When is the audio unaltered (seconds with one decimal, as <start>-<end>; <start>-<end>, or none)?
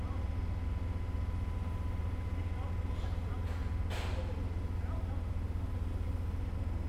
0.0-6.9